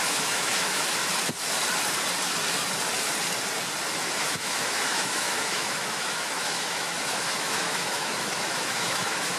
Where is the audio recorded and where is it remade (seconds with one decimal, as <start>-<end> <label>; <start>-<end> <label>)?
0.0-1.0 remade; 1.0-4.2 recorded; 4.2-9.4 remade